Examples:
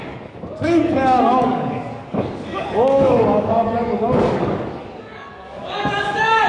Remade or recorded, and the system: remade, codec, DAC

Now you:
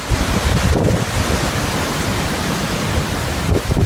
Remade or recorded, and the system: remade, vocoder, BigVGAN v2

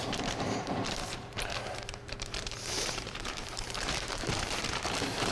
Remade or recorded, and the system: remade, vocoder, BigVGAN v2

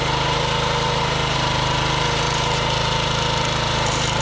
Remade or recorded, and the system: remade, vocoder, BigVGAN v2